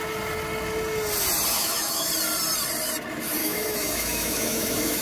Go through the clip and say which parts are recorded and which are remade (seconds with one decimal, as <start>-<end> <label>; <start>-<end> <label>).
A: 0.0-1.5 recorded; 1.5-2.1 remade; 2.1-3.4 recorded; 3.4-5.0 remade

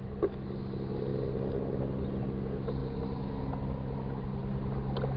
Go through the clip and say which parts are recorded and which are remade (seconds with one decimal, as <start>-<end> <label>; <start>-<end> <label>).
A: 0.0-5.2 recorded